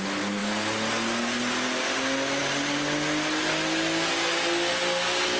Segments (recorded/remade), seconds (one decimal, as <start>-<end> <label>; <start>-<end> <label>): 0.0-5.4 recorded